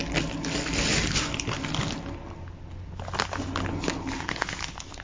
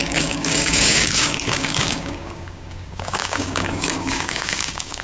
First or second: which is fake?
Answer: second